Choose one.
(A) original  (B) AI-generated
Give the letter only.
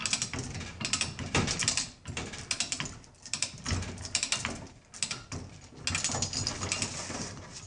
A